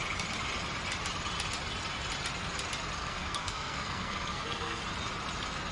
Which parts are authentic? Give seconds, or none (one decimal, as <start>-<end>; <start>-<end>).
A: 0.0-3.0; 4.8-5.7